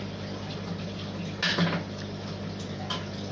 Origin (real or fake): real